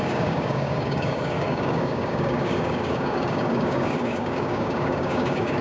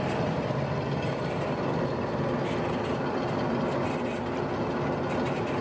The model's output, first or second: first